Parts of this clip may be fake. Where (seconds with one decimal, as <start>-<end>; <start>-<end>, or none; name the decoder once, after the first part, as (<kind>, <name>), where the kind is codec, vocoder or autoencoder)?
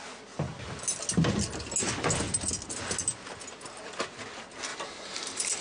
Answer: 4.7-5.6 (vocoder, BigVGAN v2)